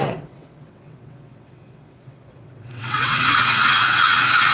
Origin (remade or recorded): remade